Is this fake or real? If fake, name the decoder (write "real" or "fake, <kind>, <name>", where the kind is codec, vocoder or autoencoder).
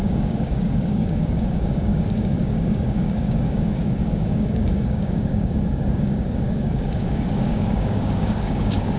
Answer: fake, codec, DAC